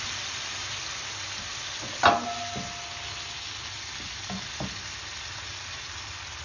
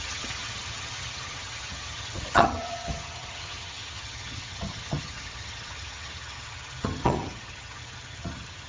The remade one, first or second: second